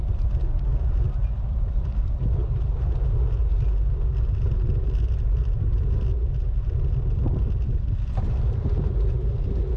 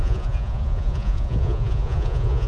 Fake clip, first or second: second